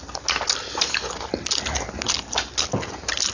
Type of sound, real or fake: real